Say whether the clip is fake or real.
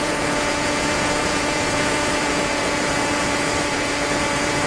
fake